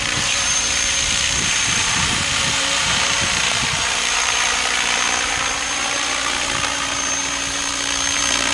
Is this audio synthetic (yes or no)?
yes